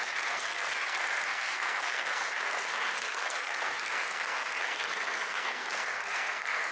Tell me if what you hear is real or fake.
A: fake